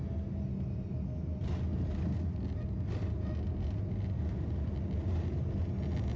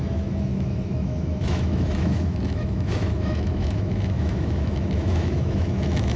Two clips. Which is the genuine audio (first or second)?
first